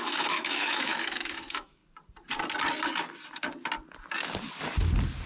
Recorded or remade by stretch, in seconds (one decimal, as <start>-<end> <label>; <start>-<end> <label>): 0.0-1.8 remade; 1.8-5.3 recorded